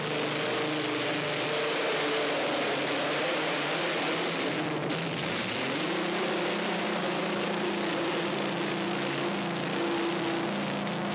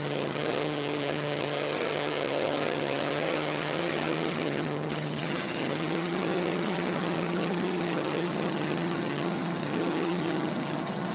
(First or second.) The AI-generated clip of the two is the second